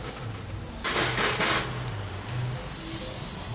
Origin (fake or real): real